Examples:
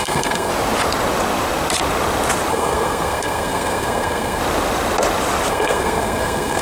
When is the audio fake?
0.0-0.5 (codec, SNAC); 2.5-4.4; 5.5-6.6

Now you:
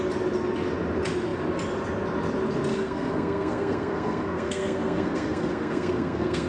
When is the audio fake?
2.7-6.5 (codec, SNAC)

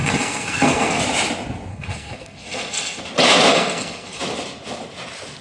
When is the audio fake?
0.0-1.0 (codec, SNAC); 1.7-3.0; 3.5-4.2

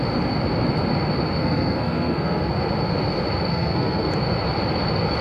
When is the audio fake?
1.4-2.5 (codec, SNAC); 3.5-4.1